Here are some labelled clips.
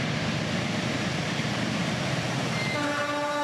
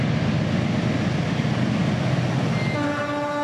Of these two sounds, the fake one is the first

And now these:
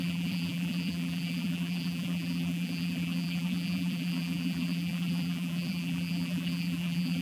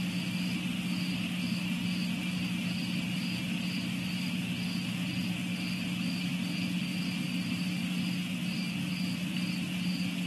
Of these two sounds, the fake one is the first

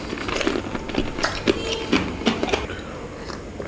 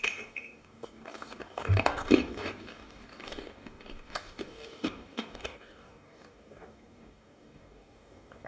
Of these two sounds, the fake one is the second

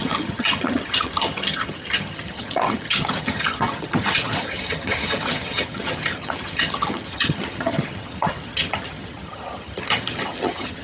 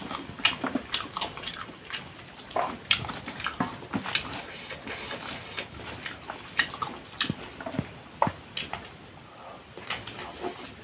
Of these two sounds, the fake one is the first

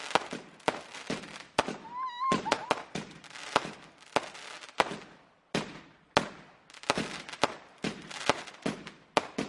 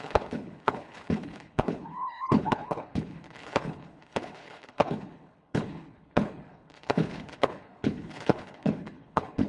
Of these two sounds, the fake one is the second